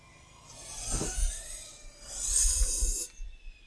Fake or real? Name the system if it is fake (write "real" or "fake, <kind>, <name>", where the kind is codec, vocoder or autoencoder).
real